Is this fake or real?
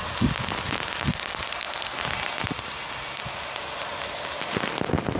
real